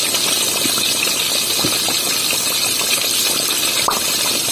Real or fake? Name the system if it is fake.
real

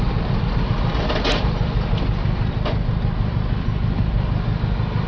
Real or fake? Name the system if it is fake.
real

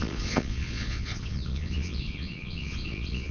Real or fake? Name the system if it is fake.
fake, vocoder, Vocos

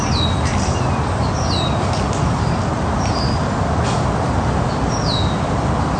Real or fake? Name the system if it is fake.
real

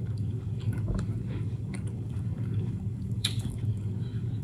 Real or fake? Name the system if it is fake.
fake, codec, DAC